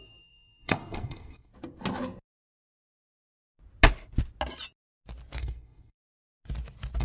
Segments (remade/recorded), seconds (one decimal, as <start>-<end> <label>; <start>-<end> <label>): 0.0-1.5 remade; 1.5-5.4 recorded; 5.4-6.0 remade; 6.0-7.0 recorded